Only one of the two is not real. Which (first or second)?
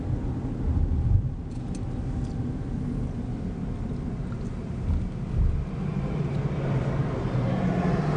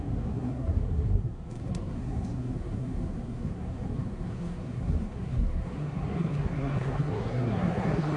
second